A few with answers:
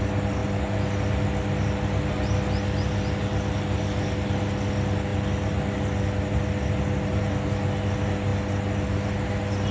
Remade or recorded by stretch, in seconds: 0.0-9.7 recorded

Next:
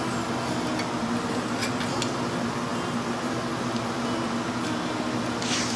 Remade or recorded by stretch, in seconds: 0.0-5.8 recorded

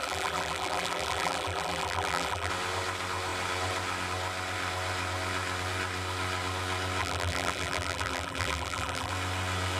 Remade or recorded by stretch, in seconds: 0.0-2.5 remade; 2.5-7.0 recorded; 7.0-9.1 remade; 9.1-9.8 recorded

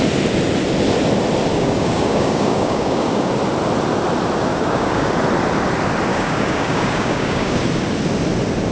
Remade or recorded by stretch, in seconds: 0.0-1.5 recorded; 1.5-3.3 remade; 3.3-4.5 recorded; 4.5-5.1 remade; 5.1-6.1 recorded; 6.1-7.6 remade; 7.6-8.7 recorded

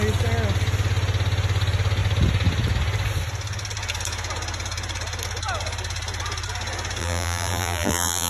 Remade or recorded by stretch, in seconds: 0.0-7.0 recorded; 7.0-8.3 remade

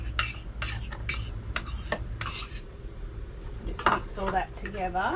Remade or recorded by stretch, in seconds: 0.0-1.1 recorded; 1.1-4.2 remade; 4.2-5.2 recorded

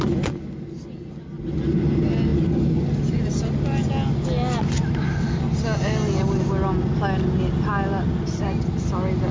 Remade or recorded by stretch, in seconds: 0.0-9.3 recorded

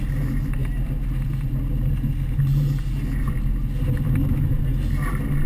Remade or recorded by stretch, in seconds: 0.0-5.5 recorded